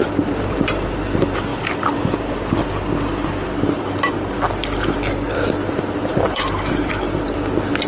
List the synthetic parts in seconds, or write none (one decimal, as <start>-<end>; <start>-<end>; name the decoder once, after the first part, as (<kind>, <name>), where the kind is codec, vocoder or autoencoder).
6.1-6.9 (vocoder, BigVGAN v2)